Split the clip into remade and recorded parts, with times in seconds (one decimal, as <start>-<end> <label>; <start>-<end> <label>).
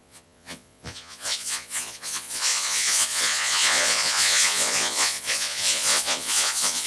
0.0-6.9 remade